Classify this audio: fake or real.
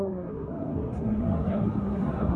fake